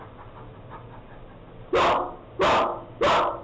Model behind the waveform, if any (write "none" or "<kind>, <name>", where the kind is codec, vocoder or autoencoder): none